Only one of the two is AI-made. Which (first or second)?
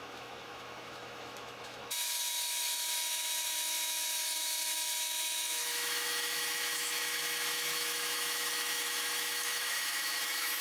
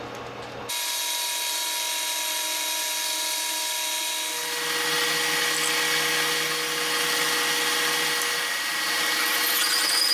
first